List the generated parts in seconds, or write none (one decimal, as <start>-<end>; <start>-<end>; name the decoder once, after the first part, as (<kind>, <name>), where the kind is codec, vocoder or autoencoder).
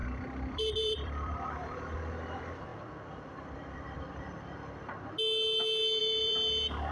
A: 0.0-2.2 (vocoder, BigVGAN v2); 2.7-5.0; 6.0-6.9